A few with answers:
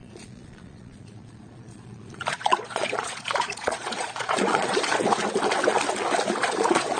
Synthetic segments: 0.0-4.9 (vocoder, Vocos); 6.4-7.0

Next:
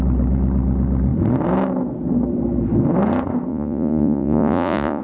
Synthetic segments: 3.5-5.0 (vocoder, Vocos)

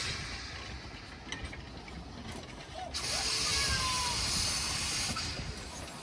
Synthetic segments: none

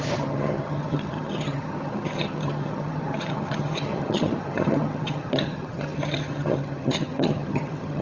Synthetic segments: 0.0-8.0 (vocoder, HiFi-GAN)

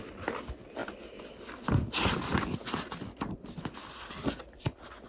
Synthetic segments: none